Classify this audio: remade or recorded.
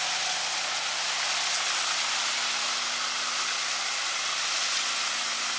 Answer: recorded